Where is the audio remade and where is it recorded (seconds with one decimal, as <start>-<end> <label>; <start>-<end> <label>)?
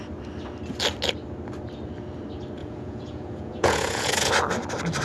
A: 0.0-2.6 recorded; 2.6-4.3 remade; 4.3-5.0 recorded